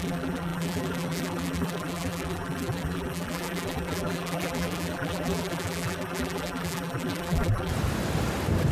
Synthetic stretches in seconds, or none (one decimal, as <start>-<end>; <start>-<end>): 0.0-7.7